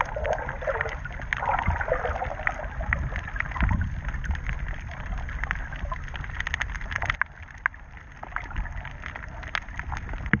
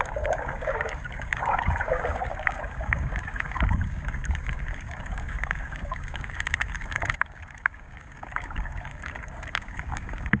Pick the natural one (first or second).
first